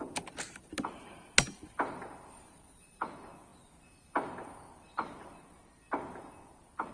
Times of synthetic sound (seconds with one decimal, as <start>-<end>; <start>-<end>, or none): none